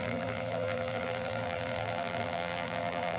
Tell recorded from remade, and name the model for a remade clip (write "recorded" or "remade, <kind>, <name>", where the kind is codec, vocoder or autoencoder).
remade, vocoder, BigVGAN v2